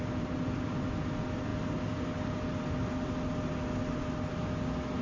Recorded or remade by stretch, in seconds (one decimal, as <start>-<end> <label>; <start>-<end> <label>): 0.0-5.0 recorded